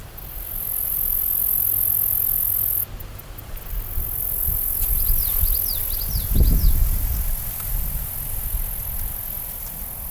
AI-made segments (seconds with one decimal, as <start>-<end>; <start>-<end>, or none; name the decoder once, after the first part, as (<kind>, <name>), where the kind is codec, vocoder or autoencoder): none